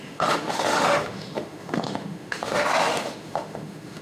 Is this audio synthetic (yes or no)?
yes